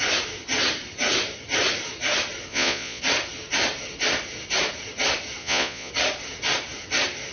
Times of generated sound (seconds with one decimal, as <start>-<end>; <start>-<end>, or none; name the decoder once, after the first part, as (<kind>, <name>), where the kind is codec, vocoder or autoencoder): 2.5-3.0 (vocoder, Vocos); 5.4-5.9